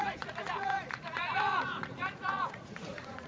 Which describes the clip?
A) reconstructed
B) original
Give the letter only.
A